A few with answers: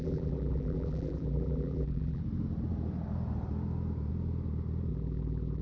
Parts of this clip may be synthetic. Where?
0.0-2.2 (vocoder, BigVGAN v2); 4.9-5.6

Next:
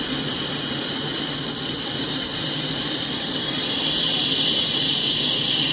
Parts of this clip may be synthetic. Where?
1.1-4.4 (vocoder, BigVGAN v2)

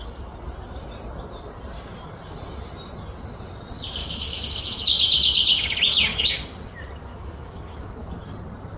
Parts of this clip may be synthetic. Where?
4.0-6.3 (autoencoder, DAC-VAE); 7.1-8.1

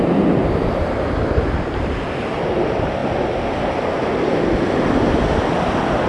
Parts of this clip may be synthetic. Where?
none